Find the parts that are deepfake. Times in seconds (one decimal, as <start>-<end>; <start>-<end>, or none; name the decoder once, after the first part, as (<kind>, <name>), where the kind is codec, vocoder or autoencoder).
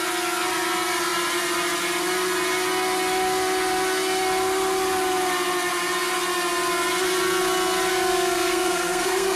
7.9-9.4 (codec, SNAC)